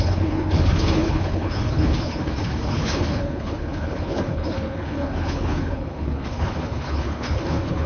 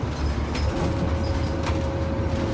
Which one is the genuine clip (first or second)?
second